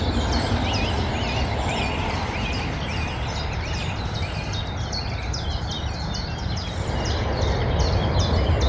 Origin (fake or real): real